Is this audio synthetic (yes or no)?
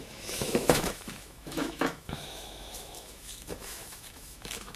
yes